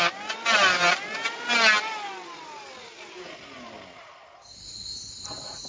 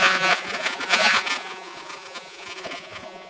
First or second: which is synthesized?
second